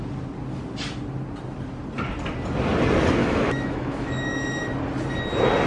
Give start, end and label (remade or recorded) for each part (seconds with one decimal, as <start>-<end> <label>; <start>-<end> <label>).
0.0-3.2 recorded; 3.2-4.7 remade; 4.7-5.7 recorded